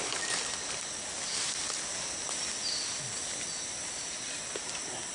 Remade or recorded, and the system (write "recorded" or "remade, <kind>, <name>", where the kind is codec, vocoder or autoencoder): recorded